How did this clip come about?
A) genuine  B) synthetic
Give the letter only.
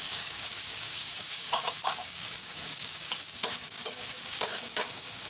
B